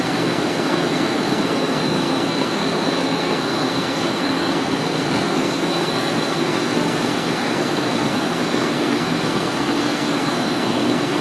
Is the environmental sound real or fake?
fake